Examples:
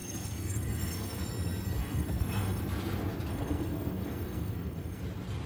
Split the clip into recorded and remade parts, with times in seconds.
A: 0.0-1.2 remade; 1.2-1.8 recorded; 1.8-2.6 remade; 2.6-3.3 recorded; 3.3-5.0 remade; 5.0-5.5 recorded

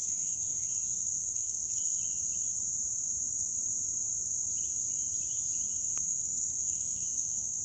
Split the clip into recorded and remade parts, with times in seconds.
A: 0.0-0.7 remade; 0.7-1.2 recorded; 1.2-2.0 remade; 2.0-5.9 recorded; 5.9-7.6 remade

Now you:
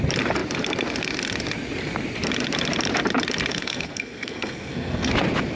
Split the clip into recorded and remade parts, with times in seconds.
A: 0.0-3.5 recorded; 3.5-5.1 remade; 5.1-5.6 recorded

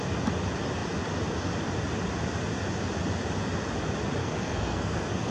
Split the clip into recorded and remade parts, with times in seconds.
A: 0.0-4.2 recorded; 4.2-5.3 remade